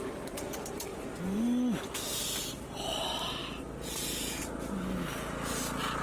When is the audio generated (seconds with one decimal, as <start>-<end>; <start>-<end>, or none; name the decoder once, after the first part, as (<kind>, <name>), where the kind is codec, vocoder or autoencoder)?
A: none